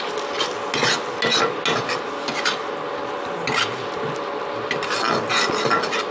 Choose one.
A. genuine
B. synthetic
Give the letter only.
A